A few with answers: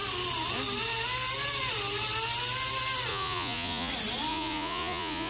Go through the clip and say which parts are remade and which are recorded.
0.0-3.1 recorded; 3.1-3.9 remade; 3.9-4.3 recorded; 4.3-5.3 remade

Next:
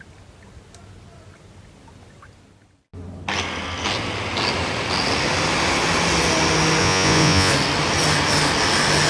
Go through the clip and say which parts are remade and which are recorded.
0.0-6.8 recorded; 6.8-7.5 remade; 7.5-9.1 recorded